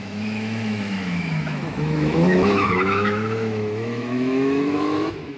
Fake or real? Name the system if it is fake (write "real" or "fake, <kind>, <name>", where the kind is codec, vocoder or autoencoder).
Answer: fake, autoencoder, DAC-VAE